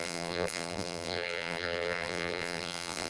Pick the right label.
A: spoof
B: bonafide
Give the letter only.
A